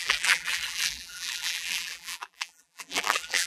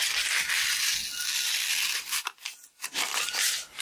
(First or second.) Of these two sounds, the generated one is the first